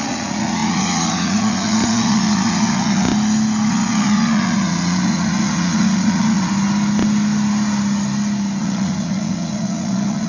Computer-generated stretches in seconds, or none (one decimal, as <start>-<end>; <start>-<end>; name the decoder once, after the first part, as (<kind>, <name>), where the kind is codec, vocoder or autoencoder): 0.0-3.1 (vocoder, Vocos); 3.7-6.5; 8.6-10.3